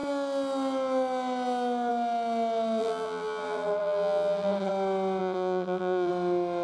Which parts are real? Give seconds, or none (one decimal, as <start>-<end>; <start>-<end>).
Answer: 0.0-2.8; 4.7-5.2; 6.1-6.6